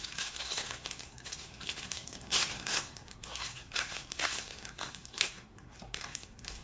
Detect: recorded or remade remade